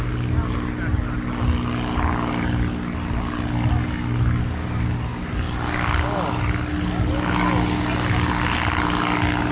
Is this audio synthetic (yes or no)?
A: no